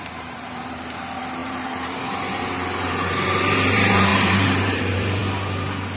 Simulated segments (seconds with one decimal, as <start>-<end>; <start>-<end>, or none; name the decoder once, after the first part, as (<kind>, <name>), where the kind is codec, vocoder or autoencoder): 0.0-5.2 (vocoder, BigVGAN v2)